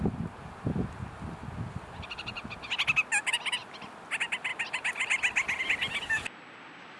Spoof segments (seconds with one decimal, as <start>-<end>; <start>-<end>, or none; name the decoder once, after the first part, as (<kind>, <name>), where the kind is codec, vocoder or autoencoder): none